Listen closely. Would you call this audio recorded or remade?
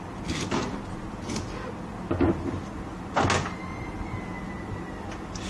recorded